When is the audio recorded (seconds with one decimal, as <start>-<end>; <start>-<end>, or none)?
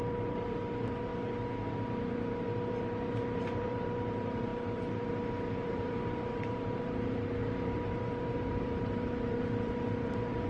1.1-2.0